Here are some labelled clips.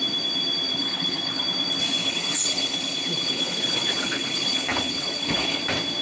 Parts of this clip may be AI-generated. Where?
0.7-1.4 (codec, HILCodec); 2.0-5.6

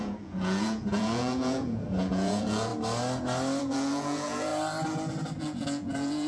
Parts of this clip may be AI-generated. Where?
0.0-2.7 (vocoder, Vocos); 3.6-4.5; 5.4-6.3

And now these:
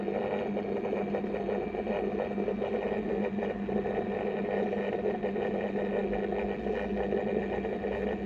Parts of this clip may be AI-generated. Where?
none

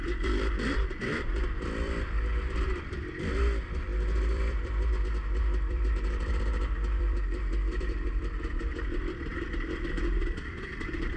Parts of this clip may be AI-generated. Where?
0.0-11.2 (vocoder, BigVGAN v2)

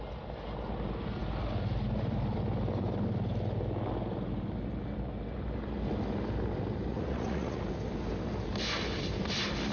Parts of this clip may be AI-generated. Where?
6.9-7.6 (vocoder, Vocos)

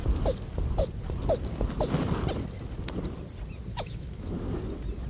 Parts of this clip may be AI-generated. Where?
3.7-4.3 (autoencoder, DAC-VAE)